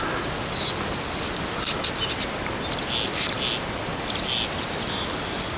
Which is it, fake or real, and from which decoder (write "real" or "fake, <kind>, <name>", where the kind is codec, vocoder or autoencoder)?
real